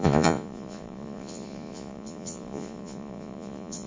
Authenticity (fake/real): fake